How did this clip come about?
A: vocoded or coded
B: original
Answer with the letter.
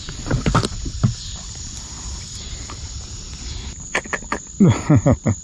A